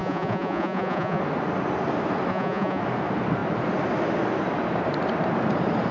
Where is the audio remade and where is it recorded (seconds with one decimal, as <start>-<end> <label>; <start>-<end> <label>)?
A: 0.0-1.2 remade; 1.2-2.3 recorded; 2.3-2.8 remade; 2.8-5.9 recorded